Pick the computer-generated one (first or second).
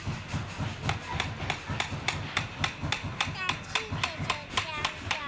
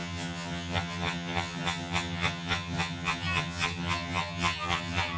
second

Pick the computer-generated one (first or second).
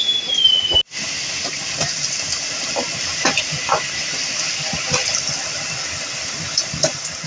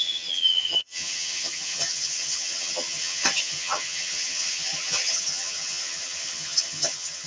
second